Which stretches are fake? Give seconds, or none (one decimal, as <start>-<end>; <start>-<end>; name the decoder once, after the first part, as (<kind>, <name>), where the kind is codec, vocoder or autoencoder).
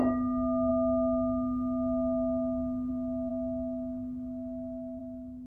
none